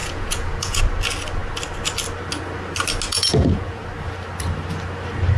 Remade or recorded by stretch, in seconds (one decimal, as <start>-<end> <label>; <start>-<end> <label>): 0.0-0.8 remade; 0.8-3.1 recorded; 3.1-3.8 remade; 3.8-5.4 recorded